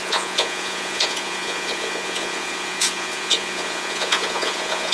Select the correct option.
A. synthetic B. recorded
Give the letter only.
A